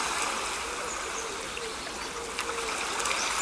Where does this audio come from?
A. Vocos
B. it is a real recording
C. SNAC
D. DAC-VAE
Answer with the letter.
B